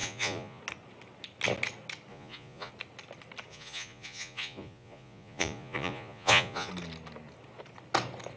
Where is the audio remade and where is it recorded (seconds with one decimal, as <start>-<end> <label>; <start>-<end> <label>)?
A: 0.0-0.6 remade; 0.6-2.1 recorded; 2.1-2.7 remade; 2.7-3.5 recorded; 3.5-6.7 remade; 6.7-8.4 recorded